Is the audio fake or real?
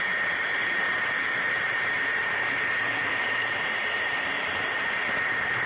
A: fake